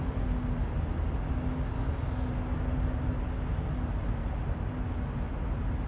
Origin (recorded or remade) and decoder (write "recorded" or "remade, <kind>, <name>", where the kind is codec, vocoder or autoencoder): recorded